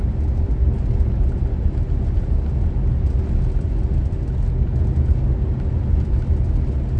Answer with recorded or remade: recorded